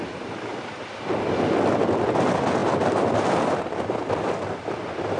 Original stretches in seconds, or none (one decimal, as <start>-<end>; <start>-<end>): 0.0-5.2